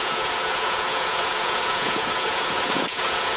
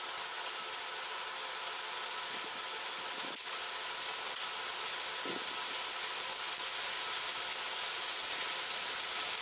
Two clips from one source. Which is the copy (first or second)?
first